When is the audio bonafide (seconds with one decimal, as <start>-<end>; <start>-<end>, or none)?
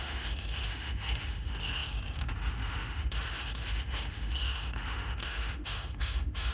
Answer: none